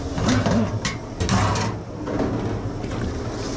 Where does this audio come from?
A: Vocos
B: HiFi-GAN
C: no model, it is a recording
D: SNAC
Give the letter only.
C